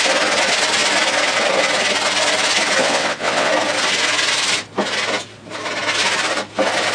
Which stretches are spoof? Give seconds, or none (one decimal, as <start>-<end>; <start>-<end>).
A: 2.8-3.5